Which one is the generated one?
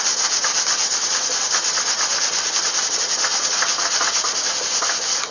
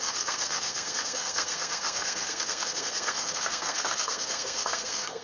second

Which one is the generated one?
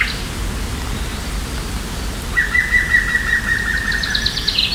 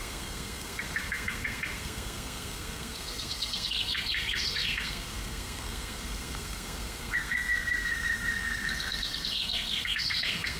second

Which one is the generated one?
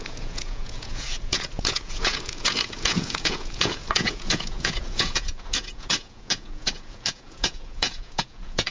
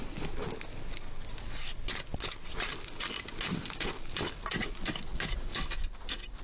first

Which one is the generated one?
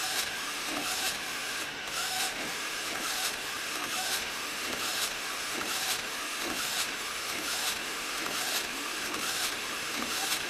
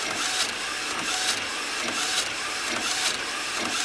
first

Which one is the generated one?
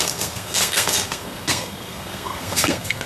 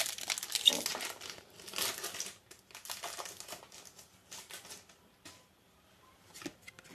first